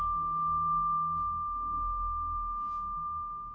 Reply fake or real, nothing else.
fake